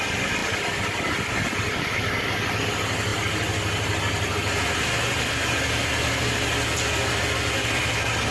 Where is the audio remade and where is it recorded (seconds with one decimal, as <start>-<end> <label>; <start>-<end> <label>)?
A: 0.0-8.3 recorded